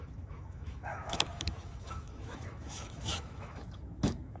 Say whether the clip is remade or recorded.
remade